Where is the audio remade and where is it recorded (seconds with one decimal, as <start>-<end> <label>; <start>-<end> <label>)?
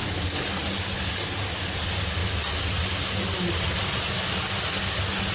0.0-5.3 recorded